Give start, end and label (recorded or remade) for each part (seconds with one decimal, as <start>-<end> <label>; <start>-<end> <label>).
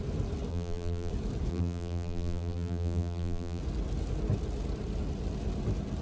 0.0-0.5 recorded; 0.5-1.1 remade; 1.1-1.5 recorded; 1.5-3.6 remade; 3.6-6.0 recorded